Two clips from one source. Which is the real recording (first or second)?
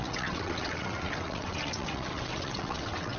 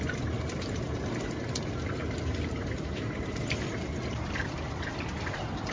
second